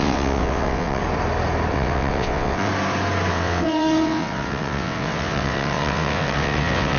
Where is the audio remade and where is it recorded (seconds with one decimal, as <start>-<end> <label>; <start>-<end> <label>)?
0.0-1.0 remade; 1.0-1.7 recorded; 1.7-2.7 remade; 2.7-3.3 recorded; 3.3-7.0 remade